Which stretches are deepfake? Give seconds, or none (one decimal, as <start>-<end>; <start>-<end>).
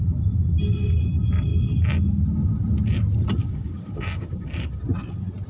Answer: 3.4-4.8